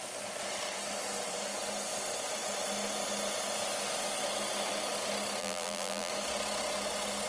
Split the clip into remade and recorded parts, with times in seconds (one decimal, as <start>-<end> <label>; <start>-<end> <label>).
0.0-5.4 recorded; 5.4-6.1 remade; 6.1-7.3 recorded